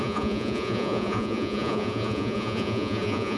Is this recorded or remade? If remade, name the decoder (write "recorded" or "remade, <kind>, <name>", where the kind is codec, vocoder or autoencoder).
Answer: remade, vocoder, Vocos